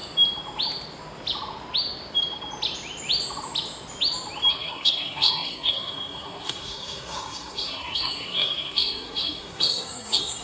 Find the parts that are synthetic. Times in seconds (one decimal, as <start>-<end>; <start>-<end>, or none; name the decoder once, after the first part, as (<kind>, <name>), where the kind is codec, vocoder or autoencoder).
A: 4.5-10.4 (codec, SNAC)